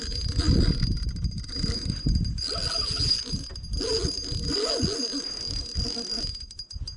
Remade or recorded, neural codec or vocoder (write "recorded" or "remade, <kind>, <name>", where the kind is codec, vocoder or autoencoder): recorded